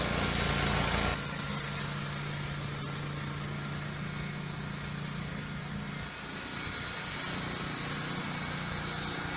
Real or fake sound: real